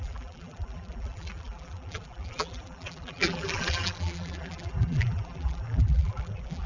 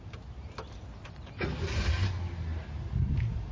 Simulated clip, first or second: first